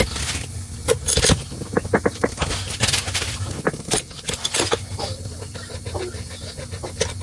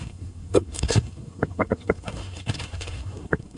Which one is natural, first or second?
first